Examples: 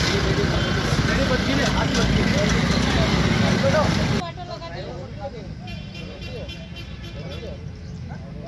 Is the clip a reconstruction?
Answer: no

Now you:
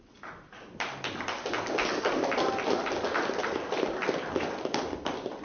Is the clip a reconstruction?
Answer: no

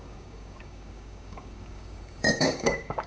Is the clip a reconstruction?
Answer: yes